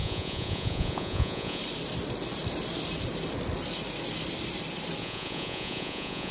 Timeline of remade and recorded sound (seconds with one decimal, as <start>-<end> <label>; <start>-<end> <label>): 0.0-1.6 remade; 1.6-5.0 recorded; 5.0-6.3 remade